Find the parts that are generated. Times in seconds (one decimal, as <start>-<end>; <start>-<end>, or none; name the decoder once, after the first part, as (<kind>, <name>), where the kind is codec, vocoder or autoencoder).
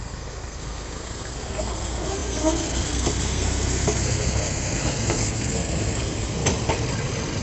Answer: 0.0-6.4 (codec, SNAC)